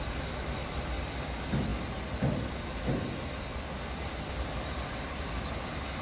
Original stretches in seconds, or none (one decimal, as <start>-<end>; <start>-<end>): 0.0-6.0